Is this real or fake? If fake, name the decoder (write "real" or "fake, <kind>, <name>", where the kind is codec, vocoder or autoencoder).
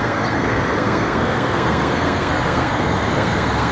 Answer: fake, codec, SNAC